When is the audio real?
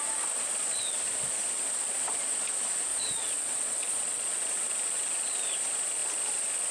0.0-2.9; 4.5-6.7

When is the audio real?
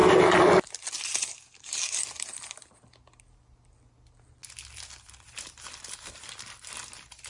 0.0-7.3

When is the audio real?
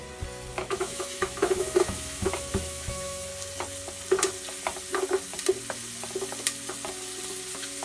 0.0-0.5; 3.3-7.8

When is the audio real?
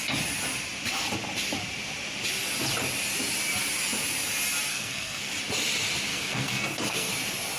0.0-4.7; 5.3-6.1; 7.1-7.6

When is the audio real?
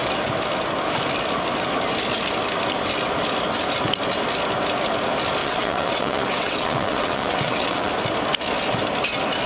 0.0-5.4; 7.9-9.5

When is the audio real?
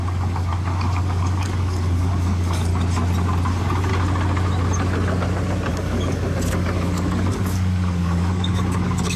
2.7-3.5; 3.9-5.7